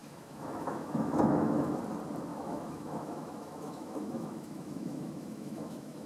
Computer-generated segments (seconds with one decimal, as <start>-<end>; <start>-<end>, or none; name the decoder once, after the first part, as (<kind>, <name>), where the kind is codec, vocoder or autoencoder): 0.0-1.8 (autoencoder, DAC-VAE); 2.3-6.1